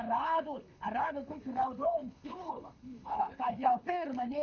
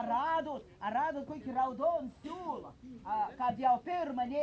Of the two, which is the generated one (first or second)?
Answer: first